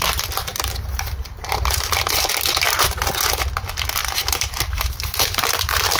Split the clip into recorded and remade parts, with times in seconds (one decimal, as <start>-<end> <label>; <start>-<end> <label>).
0.0-0.5 recorded; 0.5-2.3 remade; 2.3-4.0 recorded; 4.0-6.0 remade